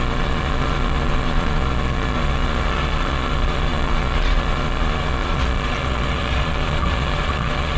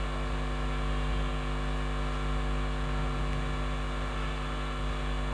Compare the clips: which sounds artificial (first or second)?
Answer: first